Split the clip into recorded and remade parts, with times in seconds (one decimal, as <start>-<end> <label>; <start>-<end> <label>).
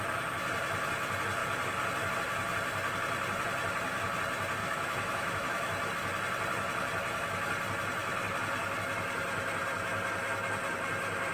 0.0-4.6 recorded; 4.6-5.9 remade; 5.9-11.3 recorded